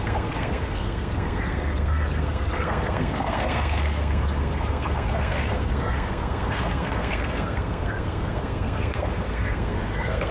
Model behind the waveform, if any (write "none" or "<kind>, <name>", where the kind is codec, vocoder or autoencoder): codec, SNAC